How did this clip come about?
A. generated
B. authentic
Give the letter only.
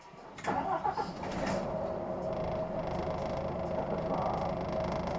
B